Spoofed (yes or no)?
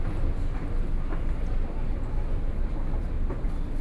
no